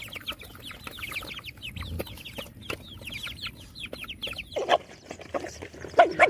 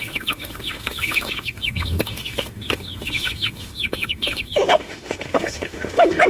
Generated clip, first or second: second